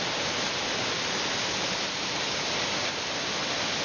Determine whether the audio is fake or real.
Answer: real